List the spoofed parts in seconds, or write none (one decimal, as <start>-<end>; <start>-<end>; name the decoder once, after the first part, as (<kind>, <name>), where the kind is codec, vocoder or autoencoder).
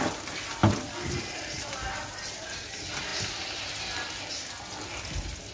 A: none